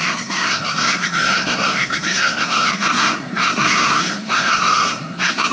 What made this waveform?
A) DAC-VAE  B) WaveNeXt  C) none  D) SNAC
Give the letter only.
D